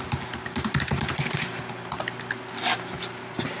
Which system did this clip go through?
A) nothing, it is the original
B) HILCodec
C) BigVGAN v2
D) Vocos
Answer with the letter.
A